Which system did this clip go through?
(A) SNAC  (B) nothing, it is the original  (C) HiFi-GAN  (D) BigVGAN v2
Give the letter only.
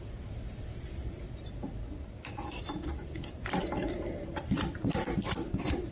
D